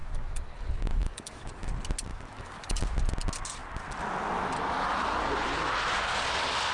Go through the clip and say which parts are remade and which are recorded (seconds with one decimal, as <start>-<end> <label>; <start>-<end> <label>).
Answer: 0.0-1.7 remade; 1.7-2.1 recorded; 2.1-2.8 remade; 2.8-6.7 recorded